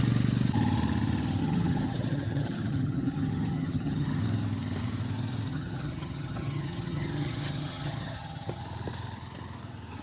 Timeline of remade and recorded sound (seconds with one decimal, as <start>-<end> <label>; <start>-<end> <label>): 0.0-1.4 recorded; 1.4-4.2 remade; 4.2-5.5 recorded; 5.5-8.6 remade; 8.6-10.0 recorded